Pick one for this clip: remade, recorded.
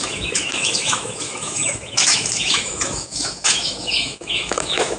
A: remade